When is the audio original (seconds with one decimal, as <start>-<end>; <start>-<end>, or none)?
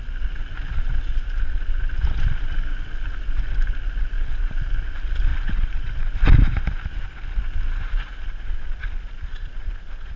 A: 0.0-10.2